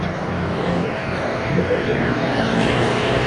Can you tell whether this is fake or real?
fake